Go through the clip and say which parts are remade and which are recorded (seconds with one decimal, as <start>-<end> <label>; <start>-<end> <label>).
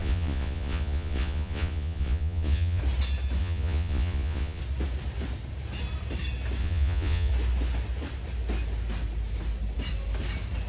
0.0-2.8 remade; 2.8-3.4 recorded; 3.4-4.6 remade; 4.6-6.6 recorded; 6.6-7.3 remade; 7.3-10.7 recorded